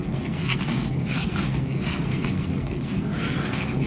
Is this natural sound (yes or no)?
no